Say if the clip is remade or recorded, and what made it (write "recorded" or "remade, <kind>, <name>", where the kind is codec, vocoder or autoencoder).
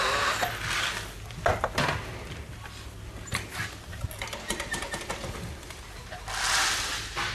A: recorded